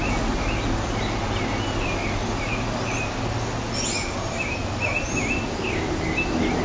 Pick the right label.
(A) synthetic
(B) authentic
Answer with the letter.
B